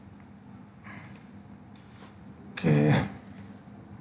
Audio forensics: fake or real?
real